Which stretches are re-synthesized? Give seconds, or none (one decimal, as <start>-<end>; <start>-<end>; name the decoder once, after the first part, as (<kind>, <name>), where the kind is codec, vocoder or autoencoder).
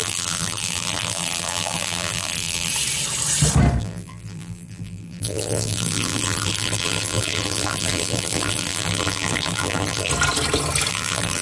0.0-2.7 (vocoder, BigVGAN v2); 3.8-10.1; 10.9-11.4